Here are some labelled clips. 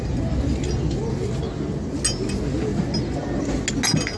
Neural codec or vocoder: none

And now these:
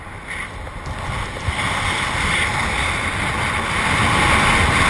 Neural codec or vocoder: none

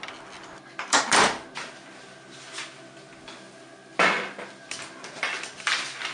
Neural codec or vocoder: none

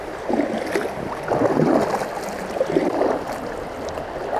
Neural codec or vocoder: none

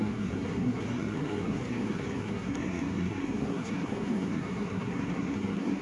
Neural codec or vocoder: codec, SNAC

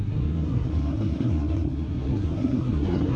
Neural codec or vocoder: codec, SNAC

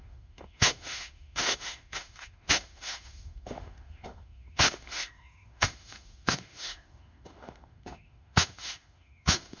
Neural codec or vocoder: autoencoder, DAC-VAE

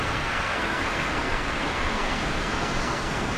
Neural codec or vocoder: codec, SNAC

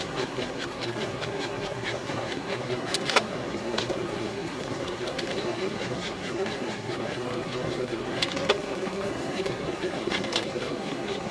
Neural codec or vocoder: codec, SNAC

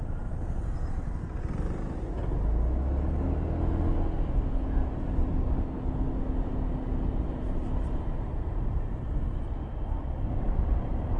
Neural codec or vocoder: none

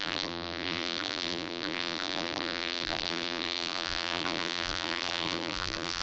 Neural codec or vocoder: vocoder, BigVGAN v2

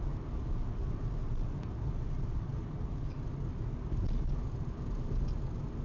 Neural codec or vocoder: none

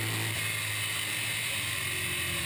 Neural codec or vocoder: none